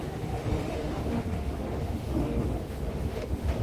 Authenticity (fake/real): fake